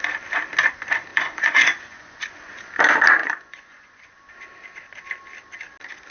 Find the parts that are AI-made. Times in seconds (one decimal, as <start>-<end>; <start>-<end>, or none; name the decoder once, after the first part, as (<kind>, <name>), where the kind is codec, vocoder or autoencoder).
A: 1.1-2.5 (vocoder, Vocos); 3.2-4.3